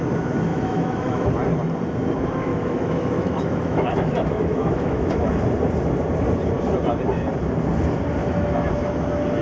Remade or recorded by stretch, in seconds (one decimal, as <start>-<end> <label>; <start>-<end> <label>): 0.0-0.5 recorded; 0.5-1.3 remade; 1.3-2.5 recorded; 2.5-5.3 remade; 5.3-8.2 recorded; 8.2-8.7 remade; 8.7-9.4 recorded